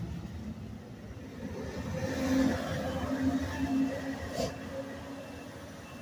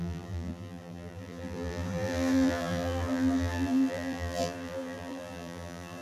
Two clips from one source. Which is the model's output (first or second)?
second